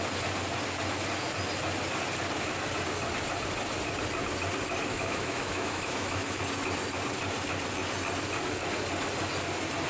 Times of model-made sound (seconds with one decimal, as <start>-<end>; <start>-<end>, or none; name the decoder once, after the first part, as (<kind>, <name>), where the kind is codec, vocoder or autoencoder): 4.9-6.4 (autoencoder, DAC-VAE)